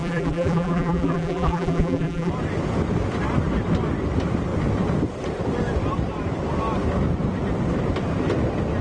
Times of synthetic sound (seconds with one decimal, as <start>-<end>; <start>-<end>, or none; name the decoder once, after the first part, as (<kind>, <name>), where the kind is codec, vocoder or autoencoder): 0.0-2.3 (vocoder, BigVGAN v2)